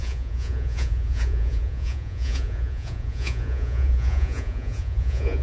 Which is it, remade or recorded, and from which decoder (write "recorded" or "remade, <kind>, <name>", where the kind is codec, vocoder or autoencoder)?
remade, vocoder, Vocos